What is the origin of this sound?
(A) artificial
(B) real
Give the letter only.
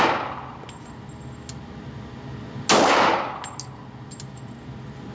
B